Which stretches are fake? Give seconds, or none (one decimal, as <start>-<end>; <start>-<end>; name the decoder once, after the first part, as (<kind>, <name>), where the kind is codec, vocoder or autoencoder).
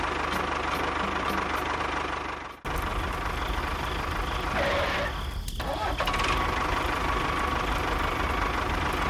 none